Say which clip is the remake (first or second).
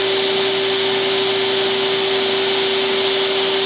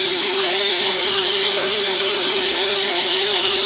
second